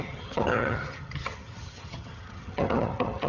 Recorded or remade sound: remade